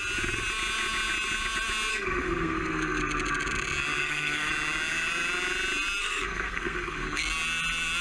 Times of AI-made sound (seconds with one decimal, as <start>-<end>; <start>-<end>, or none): 1.9-3.0; 4.0-4.5; 6.0-7.2